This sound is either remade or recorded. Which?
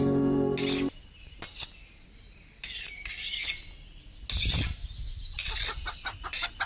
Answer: recorded